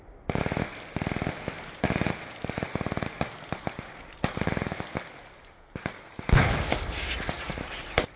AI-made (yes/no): no